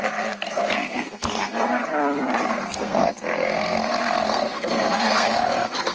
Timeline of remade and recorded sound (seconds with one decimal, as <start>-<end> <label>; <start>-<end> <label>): 0.0-1.8 remade; 1.8-2.5 recorded; 2.5-5.9 remade